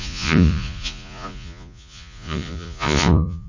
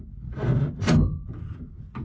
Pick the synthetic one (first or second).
first